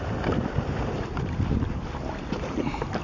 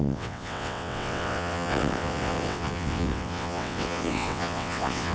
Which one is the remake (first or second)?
second